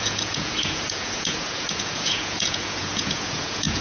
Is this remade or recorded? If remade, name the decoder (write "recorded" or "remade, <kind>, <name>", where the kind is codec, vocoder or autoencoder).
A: remade, vocoder, Vocos